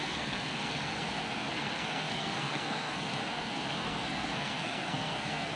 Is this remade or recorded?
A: remade